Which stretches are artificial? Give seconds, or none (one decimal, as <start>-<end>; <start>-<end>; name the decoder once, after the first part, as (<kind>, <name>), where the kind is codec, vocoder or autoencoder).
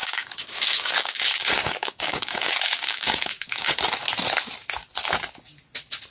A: 0.0-3.7 (codec, DAC)